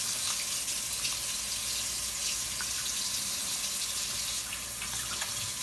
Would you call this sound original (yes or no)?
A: yes